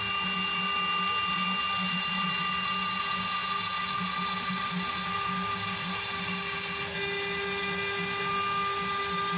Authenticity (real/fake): real